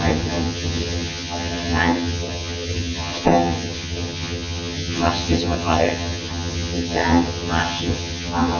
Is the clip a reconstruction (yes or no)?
yes